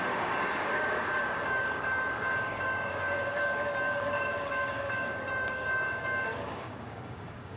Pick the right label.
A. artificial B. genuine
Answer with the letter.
A